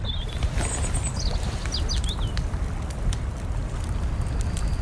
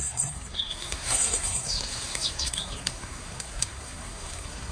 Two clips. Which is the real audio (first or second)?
first